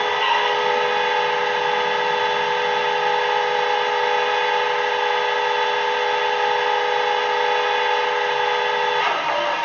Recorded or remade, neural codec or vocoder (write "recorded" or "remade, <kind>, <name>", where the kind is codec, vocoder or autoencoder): recorded